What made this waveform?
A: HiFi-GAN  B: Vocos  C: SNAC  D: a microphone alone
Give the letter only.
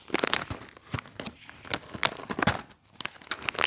D